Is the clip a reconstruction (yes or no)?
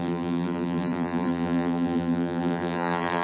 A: yes